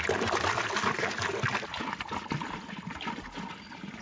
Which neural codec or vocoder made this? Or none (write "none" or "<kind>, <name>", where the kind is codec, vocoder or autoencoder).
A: none